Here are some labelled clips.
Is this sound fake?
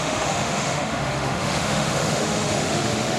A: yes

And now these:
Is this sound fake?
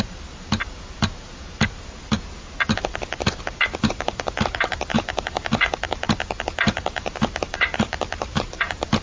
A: yes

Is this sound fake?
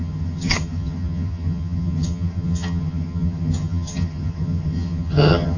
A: yes